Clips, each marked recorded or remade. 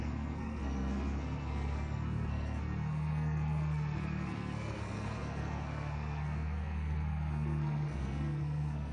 remade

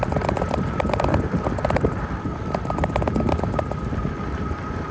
recorded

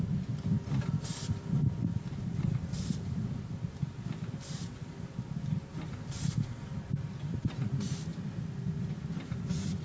recorded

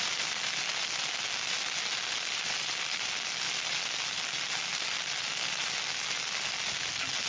recorded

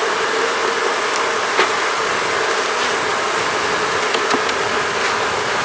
recorded